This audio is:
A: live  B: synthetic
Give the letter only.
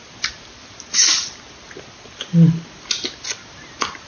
A